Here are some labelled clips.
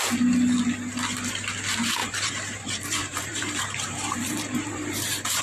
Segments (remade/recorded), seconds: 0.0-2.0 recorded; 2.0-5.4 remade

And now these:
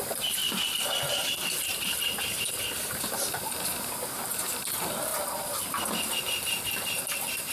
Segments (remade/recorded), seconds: 0.0-5.1 remade; 5.1-6.2 recorded; 6.2-7.5 remade

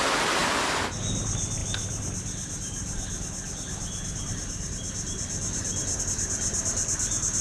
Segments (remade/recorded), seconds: 0.0-7.4 recorded

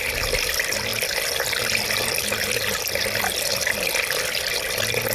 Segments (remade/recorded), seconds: 0.0-5.1 recorded

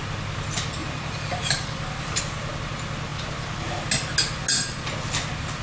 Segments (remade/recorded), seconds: 0.0-0.8 recorded; 0.8-2.2 remade; 2.2-3.1 recorded; 3.1-3.9 remade; 3.9-5.6 recorded

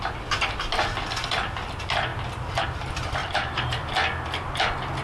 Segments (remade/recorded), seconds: 0.0-3.2 recorded; 3.2-3.9 remade; 3.9-5.0 recorded